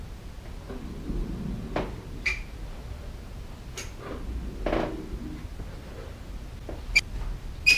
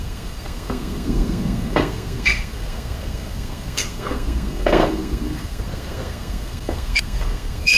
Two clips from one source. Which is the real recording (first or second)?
first